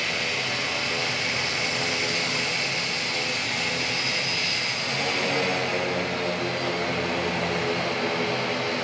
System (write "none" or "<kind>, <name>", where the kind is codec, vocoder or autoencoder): none